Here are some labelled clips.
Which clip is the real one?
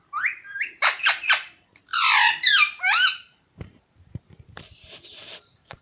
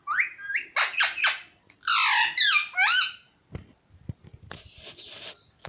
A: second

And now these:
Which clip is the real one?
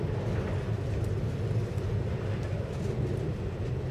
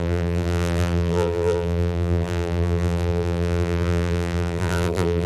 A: first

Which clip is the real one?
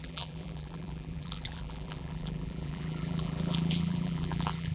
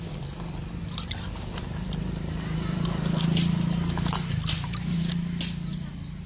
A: second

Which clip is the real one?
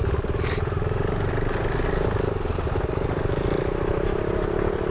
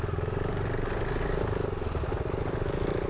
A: second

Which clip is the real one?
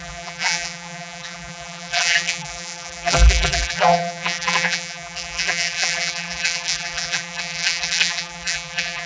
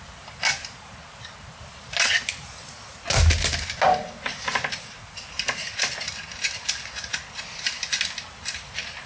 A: second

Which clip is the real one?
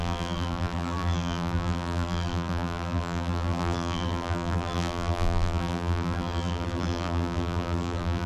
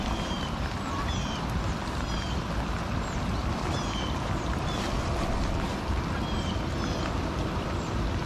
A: second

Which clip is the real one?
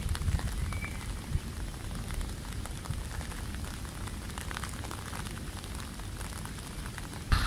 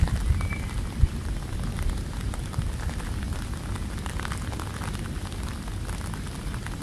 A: second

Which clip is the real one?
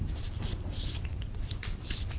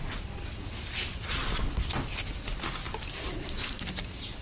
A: second